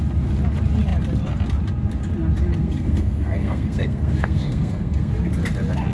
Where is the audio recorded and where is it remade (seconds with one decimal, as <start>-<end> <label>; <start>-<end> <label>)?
0.0-2.6 recorded; 2.6-5.1 remade; 5.1-5.9 recorded